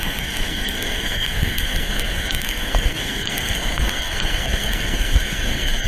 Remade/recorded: remade